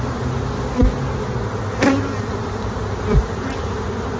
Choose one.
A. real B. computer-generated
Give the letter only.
A